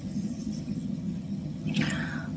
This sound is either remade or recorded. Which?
remade